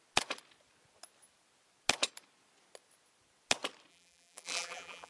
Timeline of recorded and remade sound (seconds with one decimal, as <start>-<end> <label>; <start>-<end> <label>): 0.0-3.9 recorded; 3.9-5.1 remade